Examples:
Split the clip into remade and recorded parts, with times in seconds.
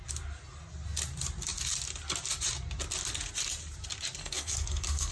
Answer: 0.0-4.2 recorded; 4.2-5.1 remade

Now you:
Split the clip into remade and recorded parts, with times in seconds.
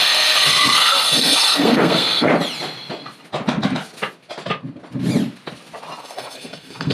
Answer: 0.0-2.3 remade; 2.3-6.0 recorded; 6.0-6.9 remade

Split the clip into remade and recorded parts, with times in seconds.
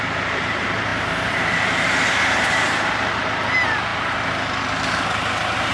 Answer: 0.0-5.7 recorded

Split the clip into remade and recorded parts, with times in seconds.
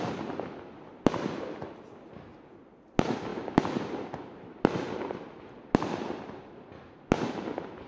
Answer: 0.0-7.9 recorded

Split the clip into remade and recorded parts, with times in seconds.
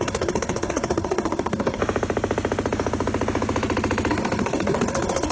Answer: 0.0-1.8 remade; 1.8-4.1 recorded; 4.1-5.3 remade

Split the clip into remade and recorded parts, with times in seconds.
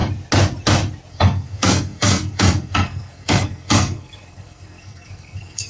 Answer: 0.0-1.1 recorded; 1.1-5.7 remade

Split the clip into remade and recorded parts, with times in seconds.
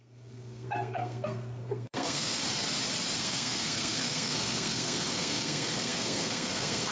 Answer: 0.0-2.4 remade; 2.4-3.2 recorded; 3.2-6.9 remade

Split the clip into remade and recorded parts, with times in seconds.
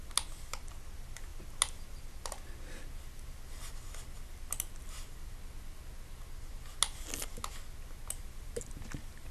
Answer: 0.0-9.3 recorded